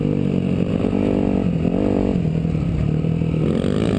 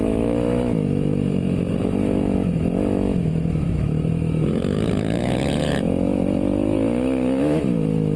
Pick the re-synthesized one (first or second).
second